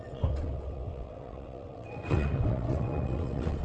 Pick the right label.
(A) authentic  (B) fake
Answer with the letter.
B